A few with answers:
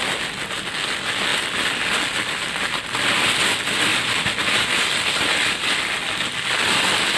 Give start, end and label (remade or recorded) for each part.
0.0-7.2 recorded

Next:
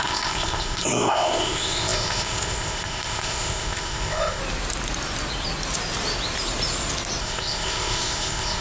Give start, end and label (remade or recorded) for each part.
0.0-4.4 remade; 4.4-7.2 recorded; 7.2-8.6 remade

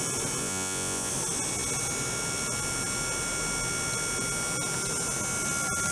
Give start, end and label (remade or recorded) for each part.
0.0-0.4 recorded; 0.4-1.1 remade; 1.1-5.9 recorded

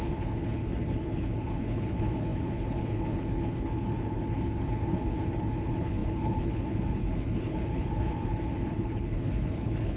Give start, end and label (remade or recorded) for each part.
0.0-10.0 remade

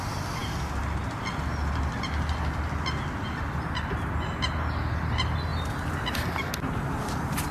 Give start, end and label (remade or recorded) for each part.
0.0-7.5 recorded

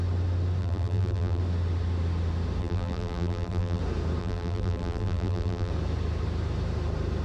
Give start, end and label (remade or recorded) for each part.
0.0-0.6 recorded; 0.6-1.4 remade; 1.4-2.6 recorded; 2.6-3.8 remade; 3.8-4.2 recorded; 4.2-5.7 remade; 5.7-7.2 recorded

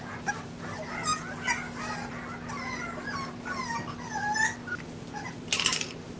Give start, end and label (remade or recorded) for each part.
0.0-6.2 recorded

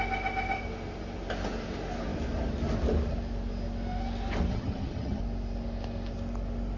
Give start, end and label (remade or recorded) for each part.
0.0-4.5 recorded; 4.5-5.2 remade; 5.2-6.8 recorded